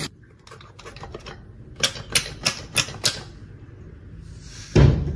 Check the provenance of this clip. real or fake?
real